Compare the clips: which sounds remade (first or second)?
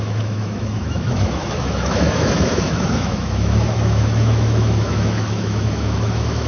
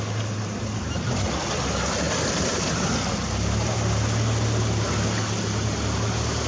first